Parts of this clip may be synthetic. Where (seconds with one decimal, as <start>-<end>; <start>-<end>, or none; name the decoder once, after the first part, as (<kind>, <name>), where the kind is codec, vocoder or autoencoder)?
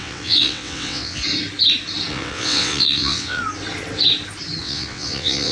0.0-1.2 (vocoder, WaveNeXt); 2.1-3.4; 4.6-5.5